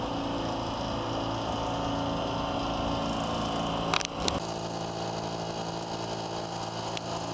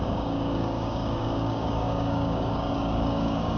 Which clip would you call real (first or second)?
first